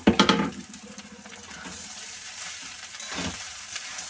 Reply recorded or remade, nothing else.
remade